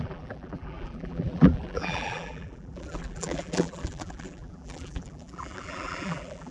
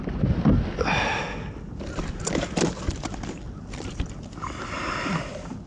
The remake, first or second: first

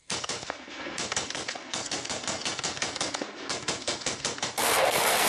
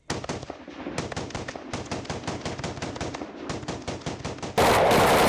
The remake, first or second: first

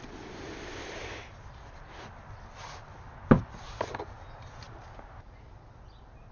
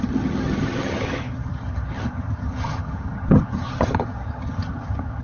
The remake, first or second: second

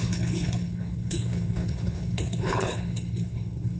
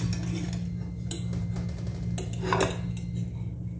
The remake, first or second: first